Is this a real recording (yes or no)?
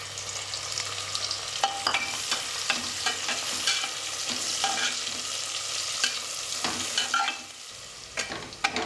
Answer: yes